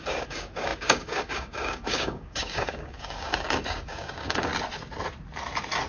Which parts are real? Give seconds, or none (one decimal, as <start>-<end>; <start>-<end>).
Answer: 4.5-5.9